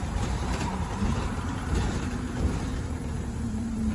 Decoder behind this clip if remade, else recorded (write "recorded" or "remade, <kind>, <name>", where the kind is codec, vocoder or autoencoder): remade, vocoder, BigVGAN v2